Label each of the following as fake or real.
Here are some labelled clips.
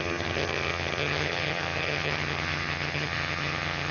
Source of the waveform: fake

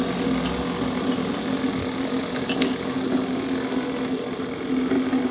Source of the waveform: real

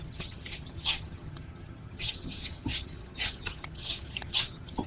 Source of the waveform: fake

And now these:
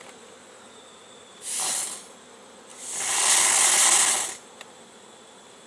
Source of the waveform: real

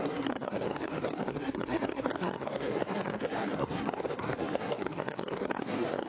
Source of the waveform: fake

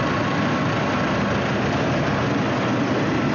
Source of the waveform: real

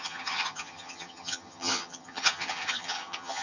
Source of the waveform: fake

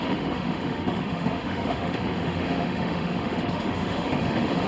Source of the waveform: fake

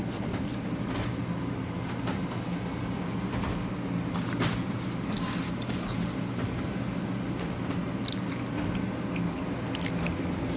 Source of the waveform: real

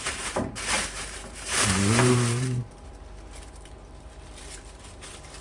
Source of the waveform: fake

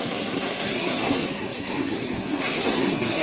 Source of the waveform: fake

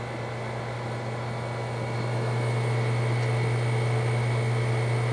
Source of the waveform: real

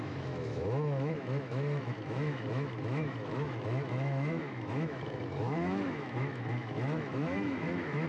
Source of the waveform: fake